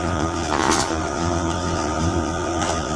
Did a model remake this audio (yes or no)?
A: yes